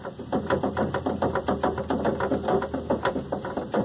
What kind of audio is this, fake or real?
real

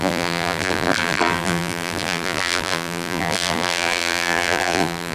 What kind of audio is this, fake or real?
fake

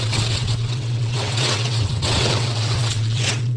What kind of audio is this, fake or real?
fake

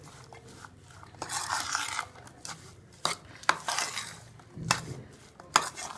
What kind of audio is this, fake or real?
real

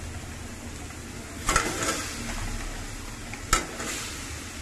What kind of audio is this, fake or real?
real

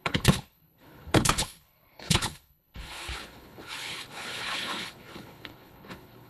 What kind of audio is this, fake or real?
fake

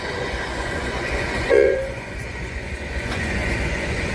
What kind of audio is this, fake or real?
fake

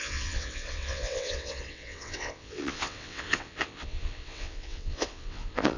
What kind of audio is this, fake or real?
fake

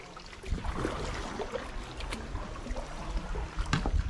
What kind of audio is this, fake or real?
real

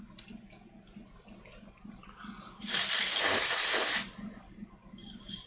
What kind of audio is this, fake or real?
real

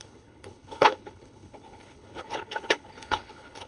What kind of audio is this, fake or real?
fake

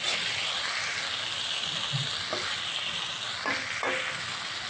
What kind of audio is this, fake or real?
real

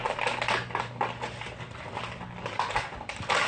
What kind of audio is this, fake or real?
real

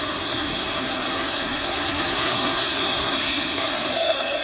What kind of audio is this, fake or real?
fake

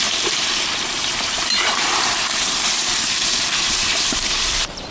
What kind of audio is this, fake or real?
fake